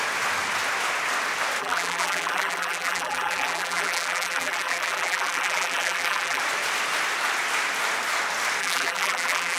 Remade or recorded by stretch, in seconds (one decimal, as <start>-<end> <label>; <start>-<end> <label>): 0.0-1.6 recorded; 1.6-6.4 remade; 6.4-8.6 recorded; 8.6-9.6 remade